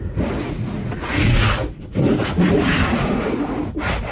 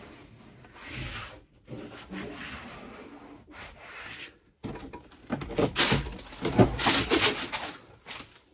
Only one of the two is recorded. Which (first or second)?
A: second